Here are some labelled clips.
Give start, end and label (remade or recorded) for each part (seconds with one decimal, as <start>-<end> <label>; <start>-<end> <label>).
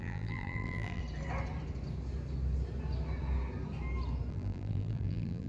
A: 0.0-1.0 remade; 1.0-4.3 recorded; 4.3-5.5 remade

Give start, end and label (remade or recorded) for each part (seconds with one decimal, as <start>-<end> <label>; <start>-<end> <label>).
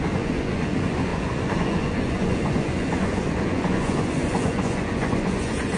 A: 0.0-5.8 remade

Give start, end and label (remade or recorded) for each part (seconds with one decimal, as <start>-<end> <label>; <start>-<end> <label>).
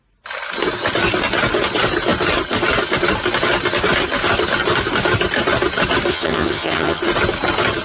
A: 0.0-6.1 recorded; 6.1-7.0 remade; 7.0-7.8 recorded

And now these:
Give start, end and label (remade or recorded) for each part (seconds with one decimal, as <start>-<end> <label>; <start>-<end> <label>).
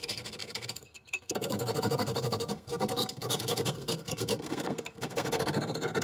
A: 0.0-6.0 remade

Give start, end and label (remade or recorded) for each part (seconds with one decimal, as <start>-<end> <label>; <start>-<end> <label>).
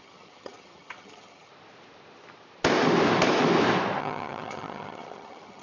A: 0.0-1.5 remade; 1.5-4.0 recorded; 4.0-5.6 remade